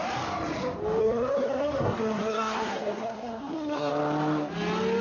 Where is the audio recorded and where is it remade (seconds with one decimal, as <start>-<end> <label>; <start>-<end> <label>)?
0.0-1.0 recorded; 1.0-3.9 remade; 3.9-5.0 recorded